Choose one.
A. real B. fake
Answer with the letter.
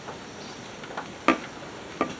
A